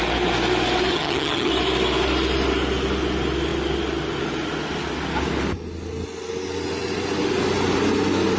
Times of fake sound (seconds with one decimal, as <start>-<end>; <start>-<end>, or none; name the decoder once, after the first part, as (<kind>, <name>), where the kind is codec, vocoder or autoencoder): 0.9-1.5 (vocoder, HiFi-GAN)